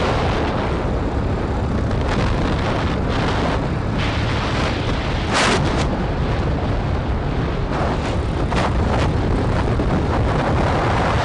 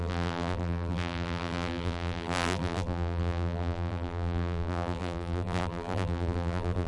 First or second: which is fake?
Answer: second